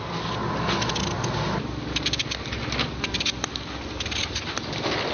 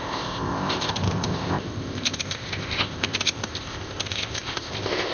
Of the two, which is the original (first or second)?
first